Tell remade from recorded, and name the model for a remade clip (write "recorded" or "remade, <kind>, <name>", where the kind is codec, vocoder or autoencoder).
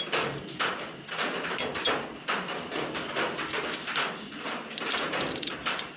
recorded